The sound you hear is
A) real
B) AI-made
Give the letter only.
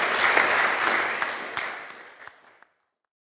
A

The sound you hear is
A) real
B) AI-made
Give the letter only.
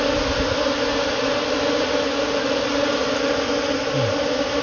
A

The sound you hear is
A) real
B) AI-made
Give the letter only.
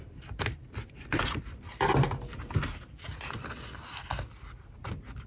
A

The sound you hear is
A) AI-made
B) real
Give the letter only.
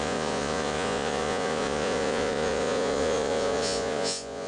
A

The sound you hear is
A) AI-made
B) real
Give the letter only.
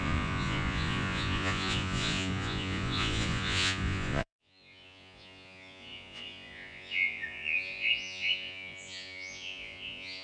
A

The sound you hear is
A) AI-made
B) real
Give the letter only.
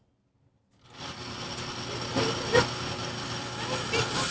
B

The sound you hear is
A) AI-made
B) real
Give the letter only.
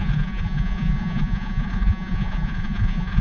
A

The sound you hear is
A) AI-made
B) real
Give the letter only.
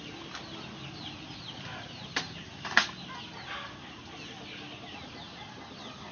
B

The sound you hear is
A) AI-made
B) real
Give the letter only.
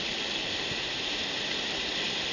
B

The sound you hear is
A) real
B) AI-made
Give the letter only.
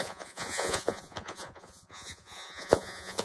B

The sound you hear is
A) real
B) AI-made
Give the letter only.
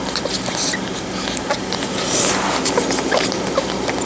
A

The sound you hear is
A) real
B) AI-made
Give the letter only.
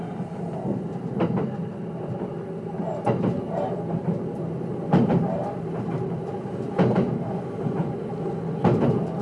A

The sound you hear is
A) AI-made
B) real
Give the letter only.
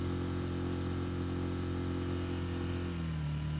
B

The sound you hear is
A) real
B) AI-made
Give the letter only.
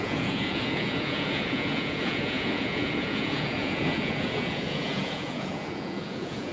B